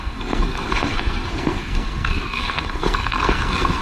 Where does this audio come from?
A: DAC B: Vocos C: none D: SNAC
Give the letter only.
D